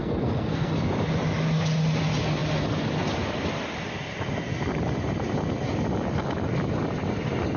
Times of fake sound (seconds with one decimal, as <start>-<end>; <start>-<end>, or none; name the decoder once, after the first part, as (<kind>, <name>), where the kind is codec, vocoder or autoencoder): 0.0-0.7 (codec, SNAC)